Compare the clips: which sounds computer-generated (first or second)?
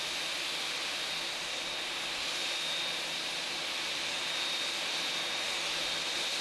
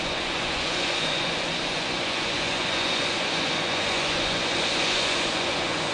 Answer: second